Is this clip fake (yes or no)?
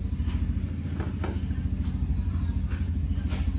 no